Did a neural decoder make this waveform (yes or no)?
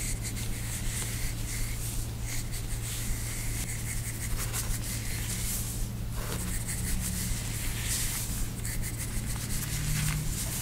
no